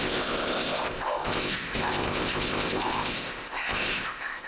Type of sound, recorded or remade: remade